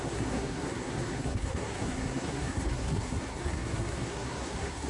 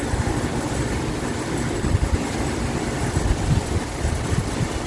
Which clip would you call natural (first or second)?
second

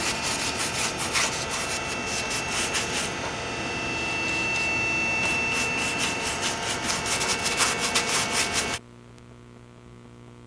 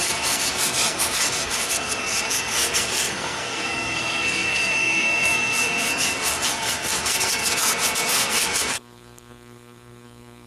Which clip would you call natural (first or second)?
first